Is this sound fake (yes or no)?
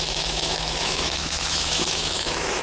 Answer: yes